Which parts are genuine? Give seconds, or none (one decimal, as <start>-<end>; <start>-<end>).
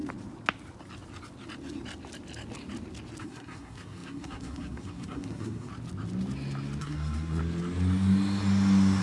0.0-3.2; 5.7-6.8; 7.4-9.0